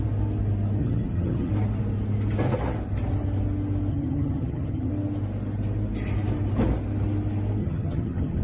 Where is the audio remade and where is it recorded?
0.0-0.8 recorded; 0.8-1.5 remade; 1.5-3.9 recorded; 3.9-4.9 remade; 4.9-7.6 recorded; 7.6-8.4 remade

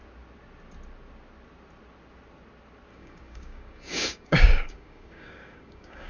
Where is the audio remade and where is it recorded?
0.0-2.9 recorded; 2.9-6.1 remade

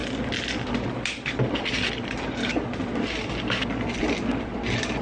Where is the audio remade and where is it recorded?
0.0-5.0 recorded

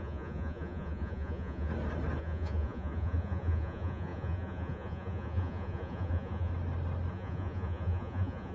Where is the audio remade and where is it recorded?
0.0-1.7 remade; 1.7-2.2 recorded; 2.2-6.5 remade; 6.5-7.1 recorded; 7.1-8.5 remade